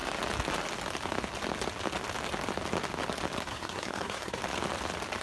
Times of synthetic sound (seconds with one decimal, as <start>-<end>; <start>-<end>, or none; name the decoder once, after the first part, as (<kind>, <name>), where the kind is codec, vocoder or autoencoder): 3.5-4.4 (codec, SNAC)